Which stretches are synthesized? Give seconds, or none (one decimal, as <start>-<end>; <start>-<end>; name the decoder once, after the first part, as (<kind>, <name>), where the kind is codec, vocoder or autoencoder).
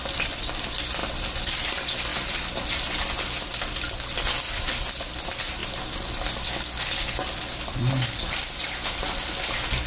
0.0-2.1 (vocoder, BigVGAN v2); 3.4-9.9